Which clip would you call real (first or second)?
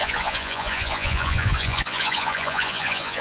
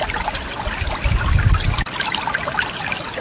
second